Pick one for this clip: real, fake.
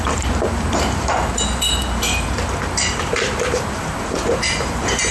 fake